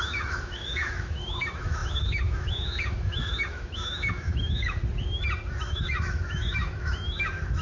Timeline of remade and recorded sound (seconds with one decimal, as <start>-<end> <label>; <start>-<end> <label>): 0.0-4.8 remade; 4.8-5.6 recorded; 5.6-7.6 remade